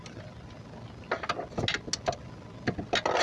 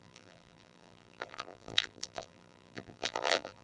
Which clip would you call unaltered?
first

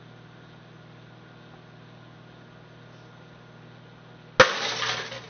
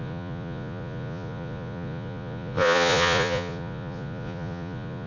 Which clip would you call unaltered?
first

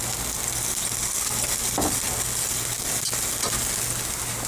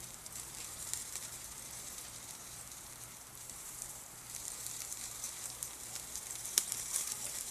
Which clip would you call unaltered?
first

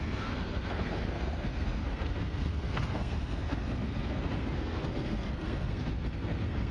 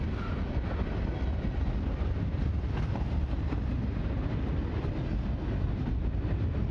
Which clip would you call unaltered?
second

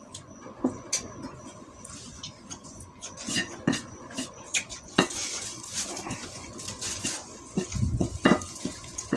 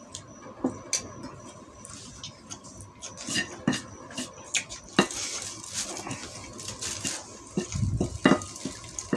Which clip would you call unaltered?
second